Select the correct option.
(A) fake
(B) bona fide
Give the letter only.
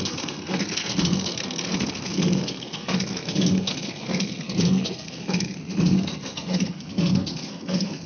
A